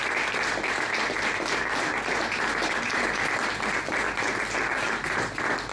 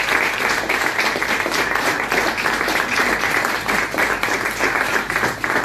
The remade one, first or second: second